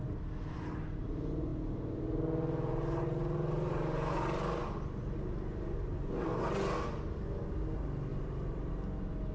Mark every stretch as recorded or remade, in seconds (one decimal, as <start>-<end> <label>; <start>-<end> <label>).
0.0-8.1 recorded; 8.1-8.7 remade; 8.7-9.3 recorded